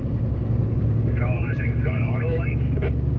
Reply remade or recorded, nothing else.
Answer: remade